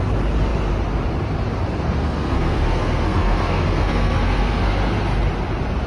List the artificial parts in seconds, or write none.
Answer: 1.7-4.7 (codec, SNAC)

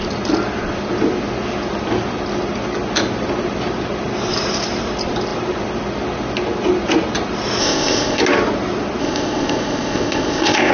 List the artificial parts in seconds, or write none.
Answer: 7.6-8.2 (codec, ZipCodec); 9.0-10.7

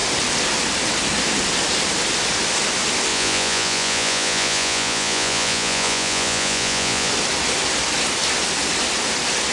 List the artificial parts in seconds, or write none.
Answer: 3.1-7.1 (vocoder, Vocos)

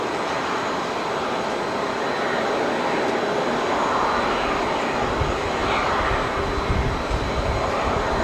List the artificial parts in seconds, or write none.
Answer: none

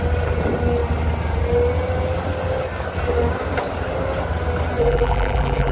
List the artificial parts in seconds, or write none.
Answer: 4.8-5.7 (vocoder, BigVGAN v2)

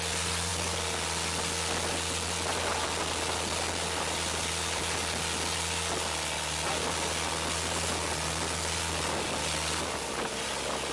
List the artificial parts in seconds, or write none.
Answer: none

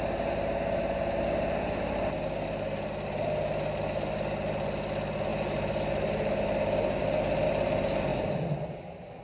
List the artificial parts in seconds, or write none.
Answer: none